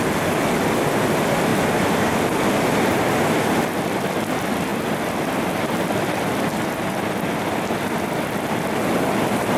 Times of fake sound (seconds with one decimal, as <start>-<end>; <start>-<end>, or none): none